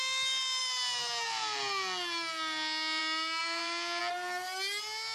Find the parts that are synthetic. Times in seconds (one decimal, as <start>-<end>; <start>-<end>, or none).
3.4-4.0